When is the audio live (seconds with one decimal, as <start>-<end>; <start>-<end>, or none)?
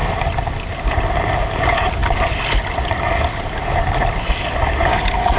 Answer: 0.0-5.4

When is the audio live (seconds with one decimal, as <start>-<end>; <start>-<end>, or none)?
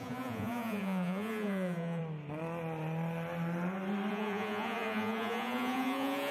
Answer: 2.0-4.1